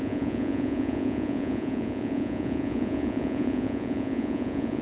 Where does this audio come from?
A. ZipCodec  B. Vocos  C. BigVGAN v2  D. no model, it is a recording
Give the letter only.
B